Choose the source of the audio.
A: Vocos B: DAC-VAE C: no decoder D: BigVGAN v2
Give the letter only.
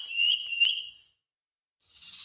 A